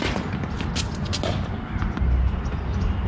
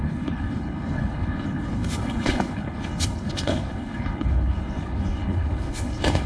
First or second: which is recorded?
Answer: first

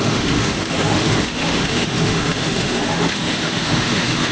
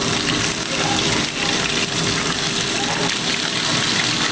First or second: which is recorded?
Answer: second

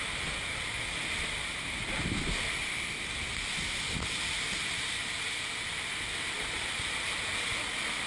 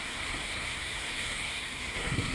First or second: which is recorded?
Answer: first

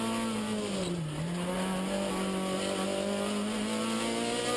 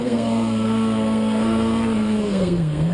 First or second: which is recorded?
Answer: first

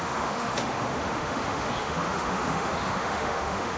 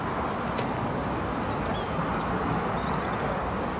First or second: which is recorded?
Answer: second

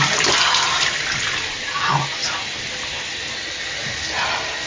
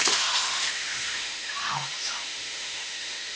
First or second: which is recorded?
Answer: first